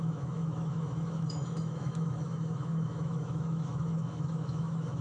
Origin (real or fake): fake